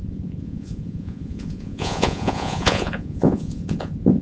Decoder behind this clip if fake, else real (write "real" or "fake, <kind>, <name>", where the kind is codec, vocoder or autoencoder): fake, vocoder, Vocos